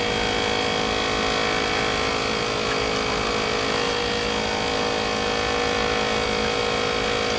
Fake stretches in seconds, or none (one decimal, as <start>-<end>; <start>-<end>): none